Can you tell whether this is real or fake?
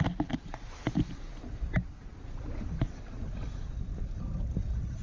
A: real